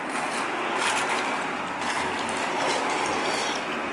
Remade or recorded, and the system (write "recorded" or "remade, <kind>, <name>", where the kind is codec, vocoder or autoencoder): recorded